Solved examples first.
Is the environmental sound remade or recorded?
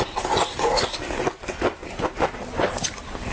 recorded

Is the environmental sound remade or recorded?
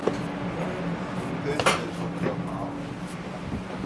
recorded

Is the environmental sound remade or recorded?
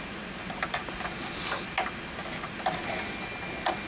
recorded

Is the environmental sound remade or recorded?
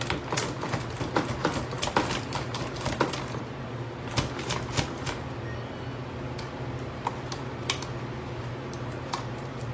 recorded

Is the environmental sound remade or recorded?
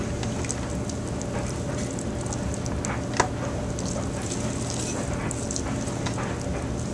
recorded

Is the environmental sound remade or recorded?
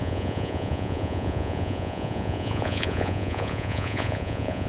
remade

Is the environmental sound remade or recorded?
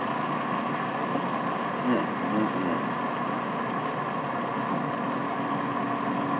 recorded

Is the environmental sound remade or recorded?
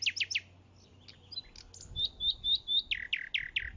recorded